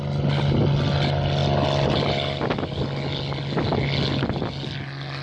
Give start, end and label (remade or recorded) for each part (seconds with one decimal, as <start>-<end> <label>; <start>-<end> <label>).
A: 0.0-5.2 recorded